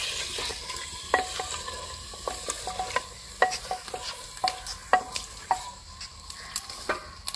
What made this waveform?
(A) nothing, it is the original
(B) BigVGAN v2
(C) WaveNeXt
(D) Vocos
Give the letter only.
A